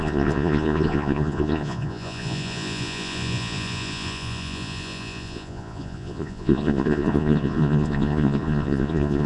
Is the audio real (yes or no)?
no